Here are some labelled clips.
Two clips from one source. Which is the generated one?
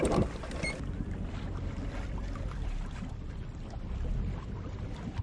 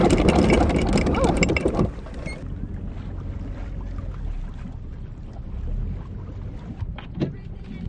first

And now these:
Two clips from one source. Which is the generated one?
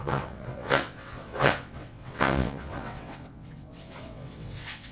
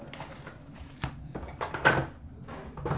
first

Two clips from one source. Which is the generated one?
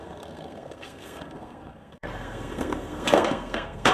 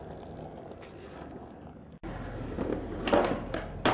first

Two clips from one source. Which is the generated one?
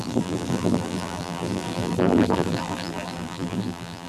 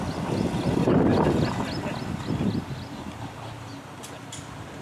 first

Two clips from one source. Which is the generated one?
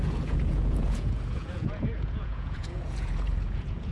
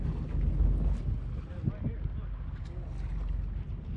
first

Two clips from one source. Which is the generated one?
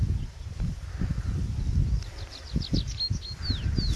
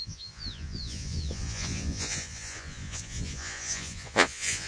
second